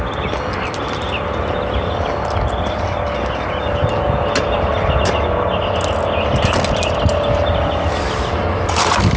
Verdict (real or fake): real